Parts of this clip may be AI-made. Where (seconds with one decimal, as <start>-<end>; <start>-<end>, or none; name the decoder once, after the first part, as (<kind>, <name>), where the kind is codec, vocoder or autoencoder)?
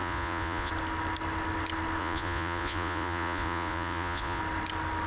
0.0-0.7 (vocoder, Vocos); 2.0-4.4